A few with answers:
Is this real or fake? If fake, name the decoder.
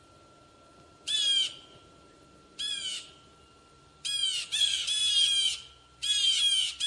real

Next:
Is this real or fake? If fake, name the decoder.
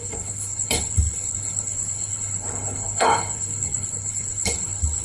fake, codec, HILCodec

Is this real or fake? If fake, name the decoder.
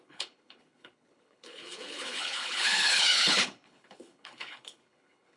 fake, codec, HILCodec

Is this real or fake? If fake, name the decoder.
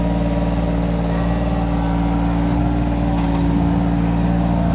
real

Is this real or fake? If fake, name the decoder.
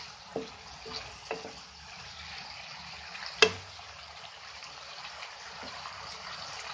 real